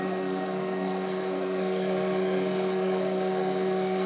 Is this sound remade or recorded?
remade